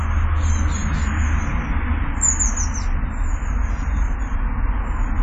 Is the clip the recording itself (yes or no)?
yes